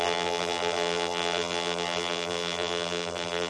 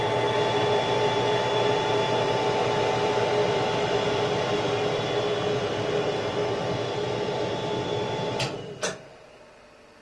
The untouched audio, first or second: second